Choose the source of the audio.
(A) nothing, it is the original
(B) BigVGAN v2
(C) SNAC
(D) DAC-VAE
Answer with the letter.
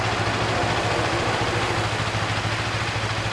A